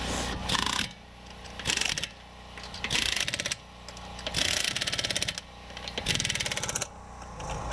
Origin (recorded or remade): recorded